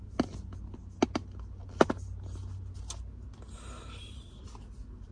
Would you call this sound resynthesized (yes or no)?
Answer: no